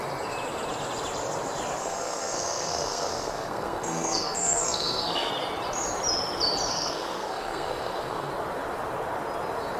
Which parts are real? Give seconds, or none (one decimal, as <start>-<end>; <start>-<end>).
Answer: 0.0-1.8; 5.3-6.7; 8.3-9.8